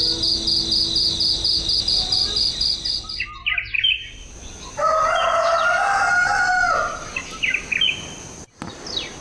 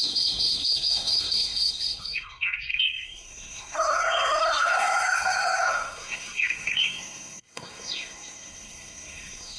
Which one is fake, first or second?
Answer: second